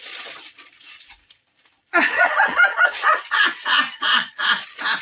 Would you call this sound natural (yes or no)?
no